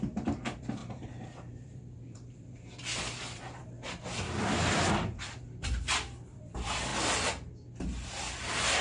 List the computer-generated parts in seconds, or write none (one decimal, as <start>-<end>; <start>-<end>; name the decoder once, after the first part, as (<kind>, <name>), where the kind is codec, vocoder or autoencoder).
0.0-6.9 (vocoder, BigVGAN v2); 8.4-8.8